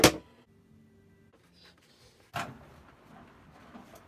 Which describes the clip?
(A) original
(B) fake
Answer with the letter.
A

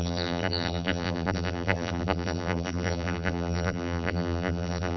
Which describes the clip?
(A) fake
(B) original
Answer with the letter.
A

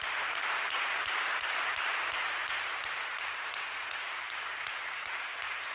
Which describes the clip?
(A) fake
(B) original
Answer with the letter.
A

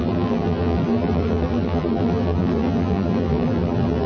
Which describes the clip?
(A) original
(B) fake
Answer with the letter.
B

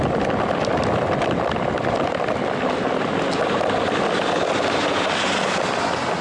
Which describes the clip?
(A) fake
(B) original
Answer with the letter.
B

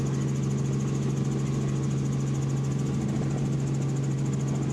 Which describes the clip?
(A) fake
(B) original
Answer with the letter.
B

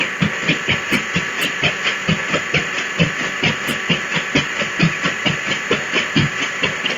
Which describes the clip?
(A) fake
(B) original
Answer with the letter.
B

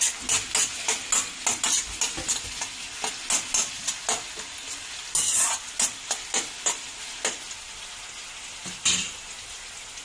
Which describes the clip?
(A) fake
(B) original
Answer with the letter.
B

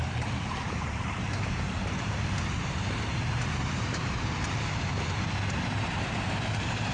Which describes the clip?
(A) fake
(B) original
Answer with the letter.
A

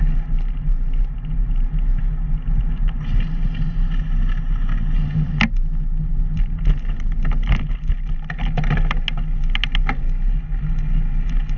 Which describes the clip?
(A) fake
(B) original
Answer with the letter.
B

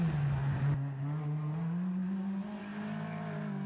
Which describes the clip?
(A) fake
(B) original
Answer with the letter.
B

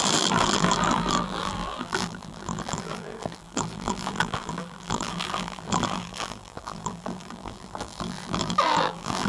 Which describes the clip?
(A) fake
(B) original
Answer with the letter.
A